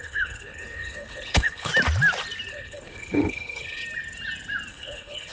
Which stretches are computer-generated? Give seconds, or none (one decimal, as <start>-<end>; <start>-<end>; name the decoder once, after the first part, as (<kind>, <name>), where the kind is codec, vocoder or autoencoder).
0.0-1.7 (codec, HILCodec); 2.5-3.8; 4.7-5.3